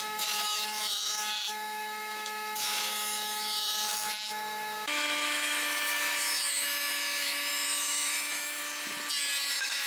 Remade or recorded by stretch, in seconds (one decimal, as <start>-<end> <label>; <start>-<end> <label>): 0.0-8.6 remade; 8.6-9.5 recorded; 9.5-9.9 remade